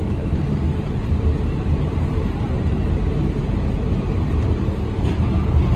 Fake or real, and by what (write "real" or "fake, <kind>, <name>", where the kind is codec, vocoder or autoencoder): fake, vocoder, BigVGAN v2